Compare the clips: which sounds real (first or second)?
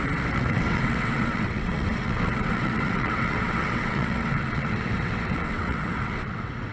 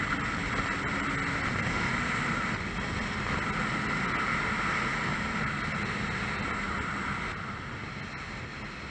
second